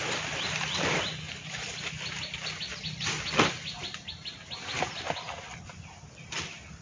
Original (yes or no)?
yes